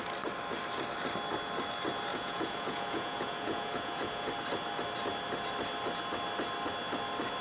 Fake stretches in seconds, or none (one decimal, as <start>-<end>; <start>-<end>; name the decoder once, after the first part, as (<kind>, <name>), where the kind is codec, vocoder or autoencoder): 2.1-4.3 (vocoder, Vocos)

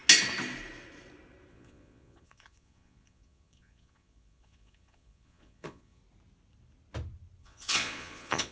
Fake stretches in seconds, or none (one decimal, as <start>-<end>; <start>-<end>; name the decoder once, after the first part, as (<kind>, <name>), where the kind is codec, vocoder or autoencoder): 1.5-6.0 (vocoder, Vocos); 7.4-8.5

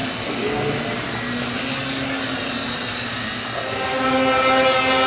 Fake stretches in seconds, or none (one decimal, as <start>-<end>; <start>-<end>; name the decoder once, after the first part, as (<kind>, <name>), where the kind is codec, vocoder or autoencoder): none

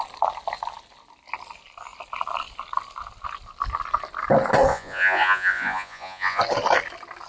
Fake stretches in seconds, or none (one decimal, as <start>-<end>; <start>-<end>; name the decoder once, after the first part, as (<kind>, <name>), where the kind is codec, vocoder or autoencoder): 4.7-6.4 (vocoder, Vocos)